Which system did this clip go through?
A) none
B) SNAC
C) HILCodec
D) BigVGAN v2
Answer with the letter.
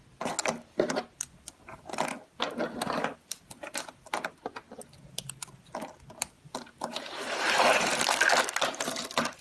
A